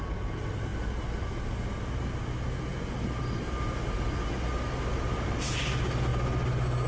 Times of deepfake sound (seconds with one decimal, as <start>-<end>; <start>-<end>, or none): none